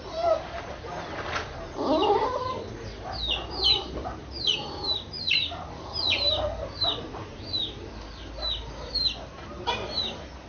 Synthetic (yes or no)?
no